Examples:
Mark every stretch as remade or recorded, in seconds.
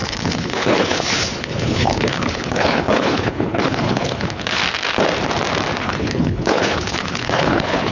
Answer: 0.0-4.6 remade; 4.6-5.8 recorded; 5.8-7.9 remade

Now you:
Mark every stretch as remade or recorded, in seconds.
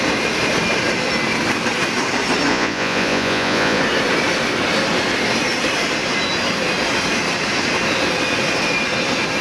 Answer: 0.0-2.5 recorded; 2.5-3.8 remade; 3.8-9.4 recorded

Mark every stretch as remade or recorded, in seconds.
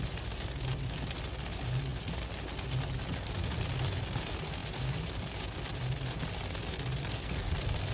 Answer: 0.0-7.0 recorded; 7.0-7.5 remade; 7.5-7.9 recorded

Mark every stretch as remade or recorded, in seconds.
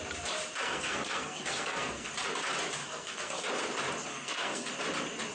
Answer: 0.0-0.6 recorded; 0.6-2.1 remade; 2.1-2.8 recorded; 2.8-3.4 remade; 3.4-4.1 recorded; 4.1-4.7 remade; 4.7-5.3 recorded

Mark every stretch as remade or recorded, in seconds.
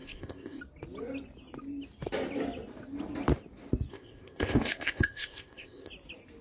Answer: 0.0-0.6 remade; 0.6-3.9 recorded; 3.9-5.9 remade; 5.9-6.4 recorded